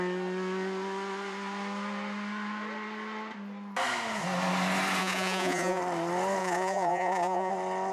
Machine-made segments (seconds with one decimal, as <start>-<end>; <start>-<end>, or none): 5.0-5.8; 6.4-7.5